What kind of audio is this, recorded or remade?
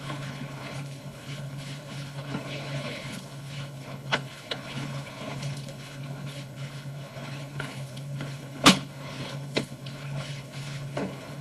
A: remade